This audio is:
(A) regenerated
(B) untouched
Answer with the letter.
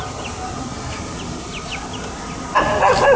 B